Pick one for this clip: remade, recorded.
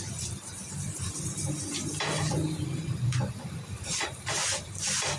remade